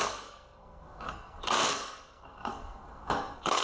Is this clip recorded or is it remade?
remade